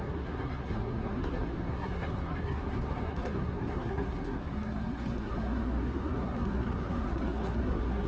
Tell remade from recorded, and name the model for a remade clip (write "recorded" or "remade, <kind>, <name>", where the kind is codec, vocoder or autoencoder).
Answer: remade, codec, SNAC